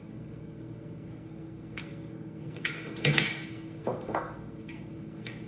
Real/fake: fake